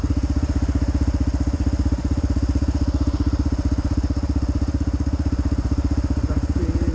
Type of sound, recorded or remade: remade